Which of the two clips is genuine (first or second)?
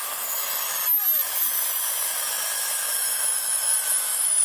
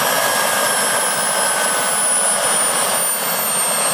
second